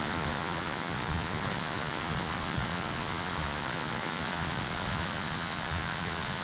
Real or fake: fake